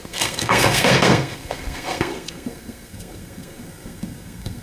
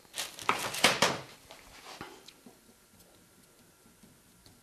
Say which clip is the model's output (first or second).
first